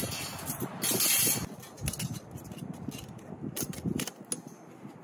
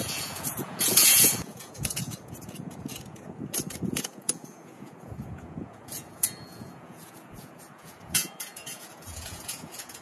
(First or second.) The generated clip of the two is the second